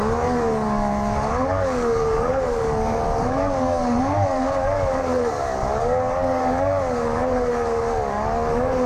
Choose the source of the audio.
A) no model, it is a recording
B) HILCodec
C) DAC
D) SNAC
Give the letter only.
C